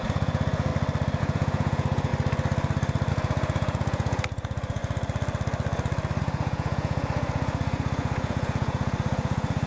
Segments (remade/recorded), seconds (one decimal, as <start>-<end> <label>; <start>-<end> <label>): 0.0-0.7 remade; 0.7-1.2 recorded; 1.2-2.1 remade; 2.1-3.1 recorded; 3.1-4.8 remade; 4.8-6.2 recorded; 6.2-9.7 remade